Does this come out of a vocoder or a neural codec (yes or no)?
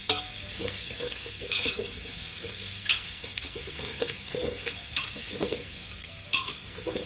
yes